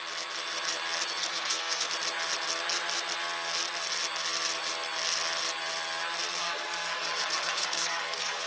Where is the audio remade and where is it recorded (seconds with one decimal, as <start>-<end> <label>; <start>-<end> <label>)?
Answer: 0.0-1.2 recorded; 1.2-1.9 remade; 1.9-6.4 recorded; 6.4-8.5 remade